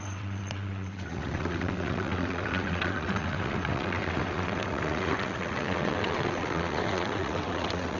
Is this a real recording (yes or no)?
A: no